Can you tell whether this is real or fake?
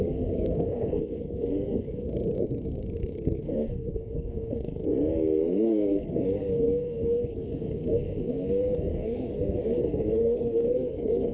fake